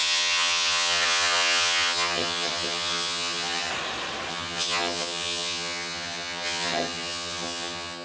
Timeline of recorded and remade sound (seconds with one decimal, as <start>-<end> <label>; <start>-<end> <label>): 0.0-3.7 remade; 3.7-4.3 recorded; 4.3-8.0 remade